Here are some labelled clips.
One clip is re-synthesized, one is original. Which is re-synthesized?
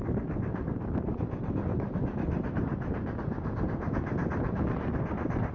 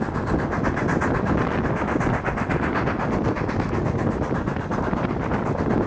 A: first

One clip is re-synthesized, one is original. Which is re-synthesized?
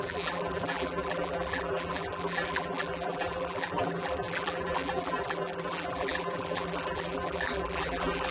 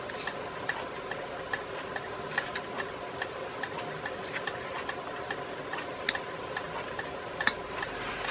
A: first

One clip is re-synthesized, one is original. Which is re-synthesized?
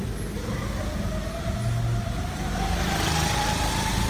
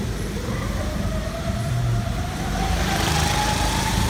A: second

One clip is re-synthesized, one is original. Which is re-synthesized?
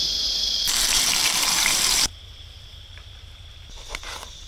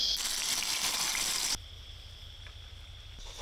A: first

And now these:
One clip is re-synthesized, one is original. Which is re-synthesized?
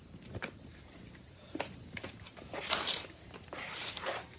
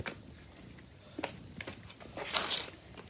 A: first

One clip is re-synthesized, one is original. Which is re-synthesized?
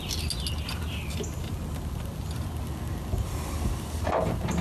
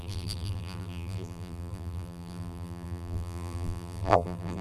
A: second